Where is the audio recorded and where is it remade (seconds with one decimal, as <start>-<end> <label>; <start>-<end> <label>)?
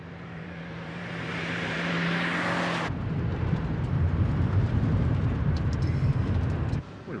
0.0-1.9 remade; 1.9-3.3 recorded; 3.3-6.5 remade; 6.5-7.2 recorded